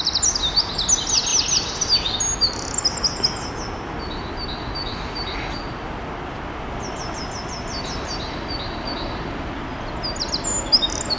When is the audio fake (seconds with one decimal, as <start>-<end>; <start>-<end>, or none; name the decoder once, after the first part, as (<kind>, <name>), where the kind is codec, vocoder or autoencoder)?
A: none